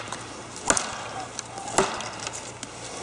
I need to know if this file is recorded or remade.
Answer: recorded